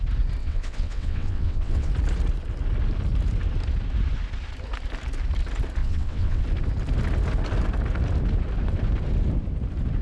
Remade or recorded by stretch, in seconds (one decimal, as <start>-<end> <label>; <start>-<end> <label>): 0.0-0.4 recorded; 0.4-1.9 remade; 1.9-5.8 recorded; 5.8-6.4 remade; 6.4-10.0 recorded